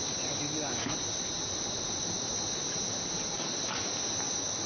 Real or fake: real